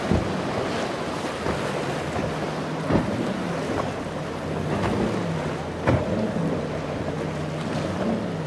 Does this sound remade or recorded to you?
recorded